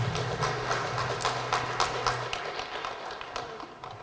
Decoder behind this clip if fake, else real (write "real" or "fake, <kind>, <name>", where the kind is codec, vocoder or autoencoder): real